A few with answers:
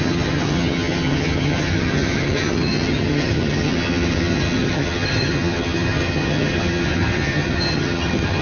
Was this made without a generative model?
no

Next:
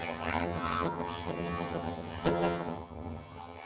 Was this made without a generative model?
no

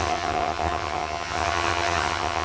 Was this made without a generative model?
no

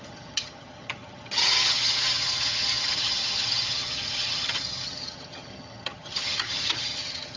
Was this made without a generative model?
no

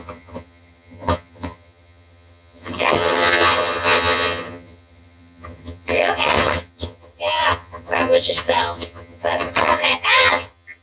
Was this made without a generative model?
no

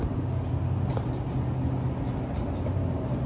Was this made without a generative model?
yes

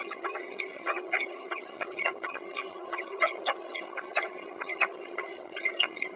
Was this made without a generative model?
no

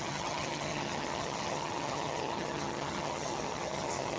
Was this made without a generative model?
no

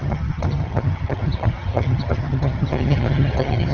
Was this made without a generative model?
no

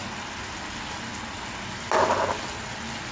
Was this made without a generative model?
yes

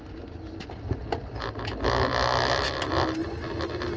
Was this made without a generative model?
yes